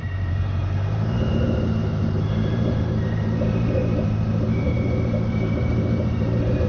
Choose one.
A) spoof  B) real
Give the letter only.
A